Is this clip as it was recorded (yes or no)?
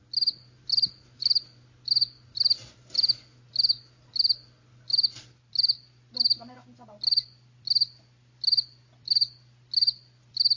yes